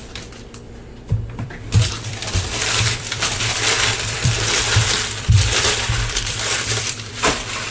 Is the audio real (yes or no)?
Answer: no